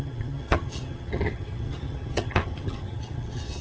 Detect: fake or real fake